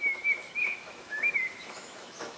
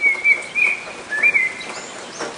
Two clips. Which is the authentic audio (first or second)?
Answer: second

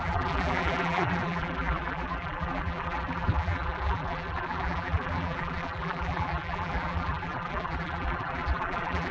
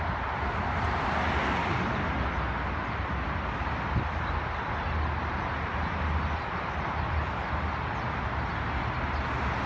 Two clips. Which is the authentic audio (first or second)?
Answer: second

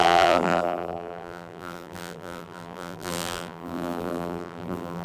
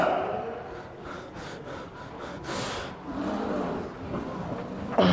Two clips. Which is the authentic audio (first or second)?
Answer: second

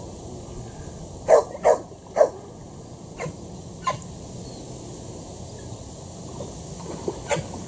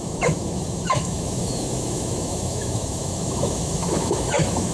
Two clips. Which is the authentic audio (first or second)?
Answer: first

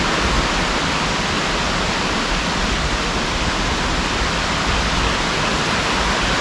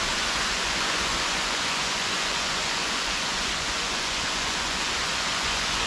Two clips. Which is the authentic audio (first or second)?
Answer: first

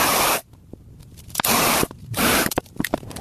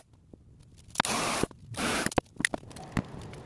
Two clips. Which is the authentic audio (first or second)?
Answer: second